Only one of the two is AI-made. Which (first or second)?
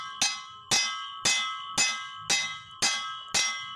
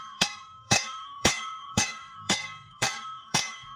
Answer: second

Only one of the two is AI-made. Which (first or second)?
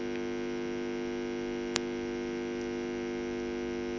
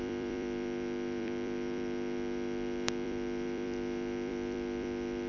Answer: second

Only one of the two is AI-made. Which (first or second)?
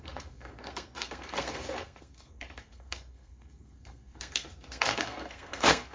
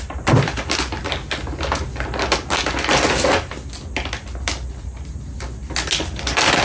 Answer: first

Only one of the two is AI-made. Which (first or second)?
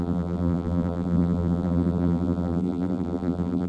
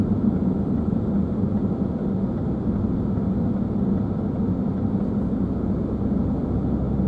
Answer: first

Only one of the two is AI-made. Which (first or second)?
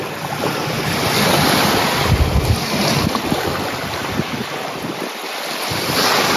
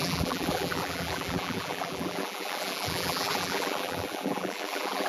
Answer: second